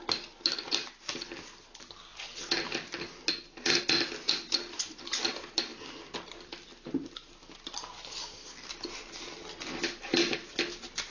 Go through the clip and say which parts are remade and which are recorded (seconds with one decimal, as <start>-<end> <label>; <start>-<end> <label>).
0.0-11.1 recorded